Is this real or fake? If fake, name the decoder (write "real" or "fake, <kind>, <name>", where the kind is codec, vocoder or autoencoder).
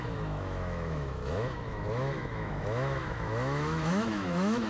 fake, autoencoder, DAC-VAE